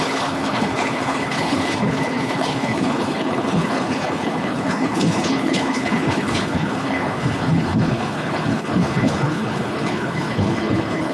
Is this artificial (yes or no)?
yes